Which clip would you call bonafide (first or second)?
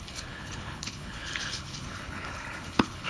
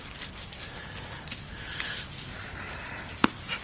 second